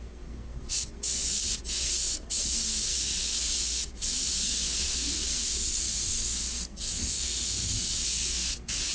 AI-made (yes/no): yes